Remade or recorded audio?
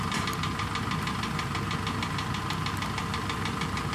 recorded